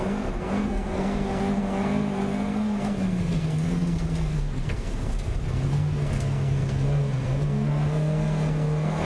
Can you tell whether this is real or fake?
fake